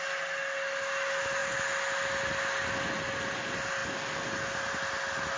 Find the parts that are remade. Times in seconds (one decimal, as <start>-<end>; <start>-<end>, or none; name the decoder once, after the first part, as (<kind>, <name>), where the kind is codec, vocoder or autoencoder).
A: none